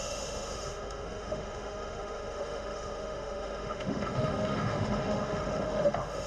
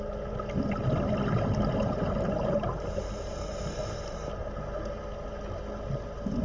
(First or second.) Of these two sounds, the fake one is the first